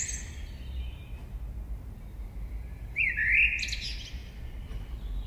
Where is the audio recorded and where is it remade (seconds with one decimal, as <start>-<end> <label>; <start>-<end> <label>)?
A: 0.0-5.3 recorded

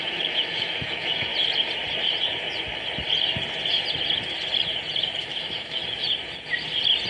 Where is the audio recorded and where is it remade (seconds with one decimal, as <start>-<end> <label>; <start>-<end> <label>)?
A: 0.0-1.3 remade; 1.3-5.2 recorded; 5.2-5.8 remade; 5.8-7.1 recorded